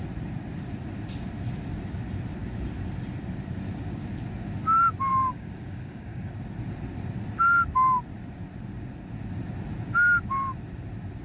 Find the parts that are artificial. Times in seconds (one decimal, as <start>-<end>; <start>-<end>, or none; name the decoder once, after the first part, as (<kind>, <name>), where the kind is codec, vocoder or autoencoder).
5.1-6.3 (codec, DAC)